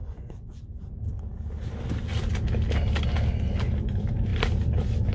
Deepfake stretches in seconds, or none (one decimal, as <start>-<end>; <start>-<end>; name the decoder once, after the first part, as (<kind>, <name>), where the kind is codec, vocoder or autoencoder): 0.0-0.6 (vocoder, Vocos)